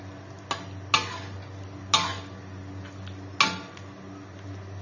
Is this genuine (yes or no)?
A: yes